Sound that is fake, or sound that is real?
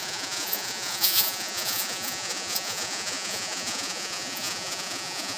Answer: fake